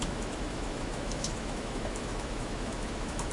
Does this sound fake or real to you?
fake